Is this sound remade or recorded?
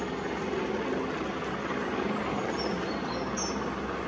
recorded